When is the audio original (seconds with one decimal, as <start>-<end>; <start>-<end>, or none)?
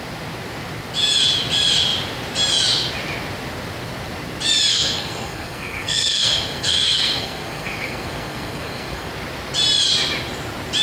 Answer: 0.0-4.7; 9.1-10.8